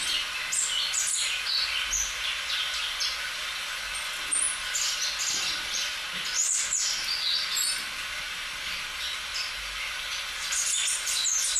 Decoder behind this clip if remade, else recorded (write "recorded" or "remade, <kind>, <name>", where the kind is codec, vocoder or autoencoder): recorded